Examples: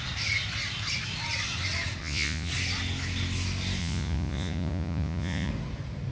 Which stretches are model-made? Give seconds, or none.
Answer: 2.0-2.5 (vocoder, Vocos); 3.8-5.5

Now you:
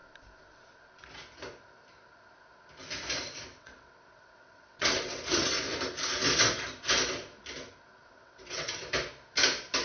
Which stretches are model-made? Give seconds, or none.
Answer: 3.5-5.5 (vocoder, WaveNeXt); 8.0-8.7

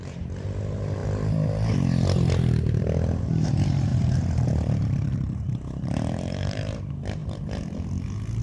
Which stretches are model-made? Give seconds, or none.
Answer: 3.9-6.8 (vocoder, BigVGAN v2)

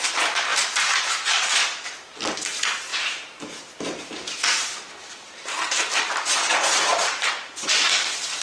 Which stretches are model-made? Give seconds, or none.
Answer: 0.5-1.1 (vocoder, BigVGAN v2); 2.9-6.5; 6.9-7.5

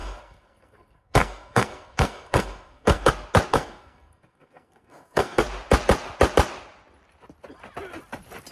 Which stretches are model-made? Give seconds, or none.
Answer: 0.0-3.1 (codec, SNAC); 3.5-5.4